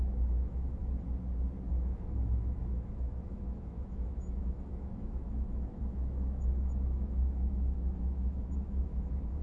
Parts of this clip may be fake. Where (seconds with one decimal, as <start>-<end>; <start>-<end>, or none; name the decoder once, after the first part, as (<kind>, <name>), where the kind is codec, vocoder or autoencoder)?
0.0-0.8 (autoencoder, DAC-VAE); 1.7-9.4